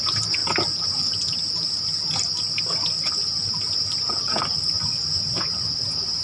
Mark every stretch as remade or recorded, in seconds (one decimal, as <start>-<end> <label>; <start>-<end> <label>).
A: 0.0-6.2 recorded